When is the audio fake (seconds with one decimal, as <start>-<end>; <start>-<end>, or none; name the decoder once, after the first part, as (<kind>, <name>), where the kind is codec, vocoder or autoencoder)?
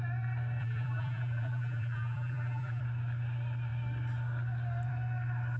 0.6-2.8 (vocoder, BigVGAN v2)